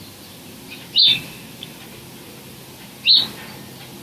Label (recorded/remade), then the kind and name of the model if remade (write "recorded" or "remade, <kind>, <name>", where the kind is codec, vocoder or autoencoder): recorded